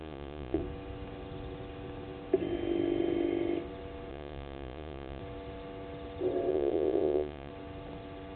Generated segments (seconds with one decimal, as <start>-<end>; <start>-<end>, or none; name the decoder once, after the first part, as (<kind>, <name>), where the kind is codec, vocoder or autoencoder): 0.0-0.6 (vocoder, Vocos); 4.1-5.2; 6.5-7.5